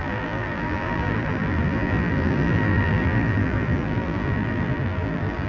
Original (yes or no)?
no